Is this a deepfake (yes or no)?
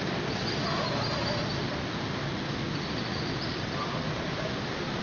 no